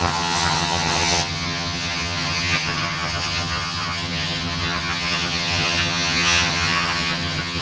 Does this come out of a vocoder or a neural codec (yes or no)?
yes